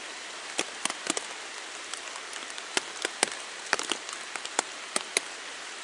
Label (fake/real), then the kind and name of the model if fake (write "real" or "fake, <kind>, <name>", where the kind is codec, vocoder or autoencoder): real